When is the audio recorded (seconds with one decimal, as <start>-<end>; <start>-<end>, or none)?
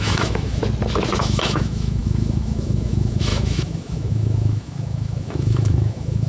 0.6-1.2